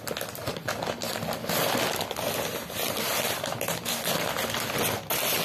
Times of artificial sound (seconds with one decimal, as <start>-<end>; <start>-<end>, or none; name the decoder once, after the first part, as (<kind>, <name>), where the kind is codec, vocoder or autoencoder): none

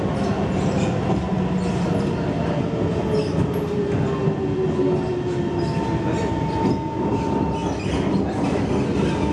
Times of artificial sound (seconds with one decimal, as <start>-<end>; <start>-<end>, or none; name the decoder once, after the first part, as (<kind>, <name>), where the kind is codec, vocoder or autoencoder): none

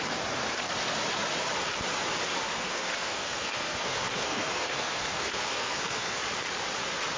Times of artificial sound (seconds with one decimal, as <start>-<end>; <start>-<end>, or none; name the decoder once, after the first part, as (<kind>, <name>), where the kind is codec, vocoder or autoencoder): 2.5-6.2 (codec, SNAC)

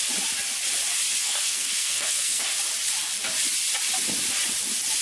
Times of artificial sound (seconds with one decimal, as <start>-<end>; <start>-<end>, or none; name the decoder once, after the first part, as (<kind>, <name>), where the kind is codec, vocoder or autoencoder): 1.2-2.4 (codec, SNAC)

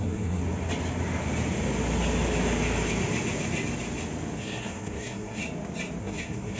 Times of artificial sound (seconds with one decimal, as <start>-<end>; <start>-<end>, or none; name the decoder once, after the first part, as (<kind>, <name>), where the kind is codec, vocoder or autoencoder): 0.0-0.4 (codec, SNAC); 4.4-5.4; 6.0-6.6